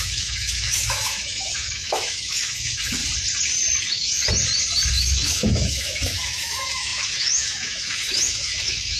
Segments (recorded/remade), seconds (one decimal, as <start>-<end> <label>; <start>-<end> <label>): 0.0-3.0 remade; 3.0-3.8 recorded; 3.8-4.2 remade; 4.2-4.9 recorded; 4.9-9.0 remade